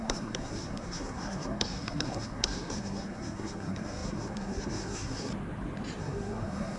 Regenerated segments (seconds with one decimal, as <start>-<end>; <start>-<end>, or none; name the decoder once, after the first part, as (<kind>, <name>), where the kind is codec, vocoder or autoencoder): 0.0-5.3 (codec, SNAC); 6.0-6.8